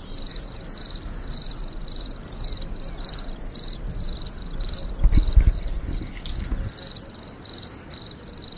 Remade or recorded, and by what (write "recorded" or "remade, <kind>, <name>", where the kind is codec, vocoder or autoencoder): recorded